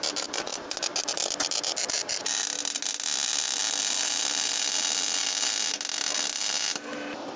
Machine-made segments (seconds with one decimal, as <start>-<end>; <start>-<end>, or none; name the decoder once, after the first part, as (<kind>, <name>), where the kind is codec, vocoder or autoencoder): none